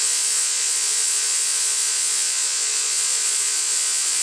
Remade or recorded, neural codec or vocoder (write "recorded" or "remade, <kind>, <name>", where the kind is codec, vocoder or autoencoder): remade, vocoder, Vocos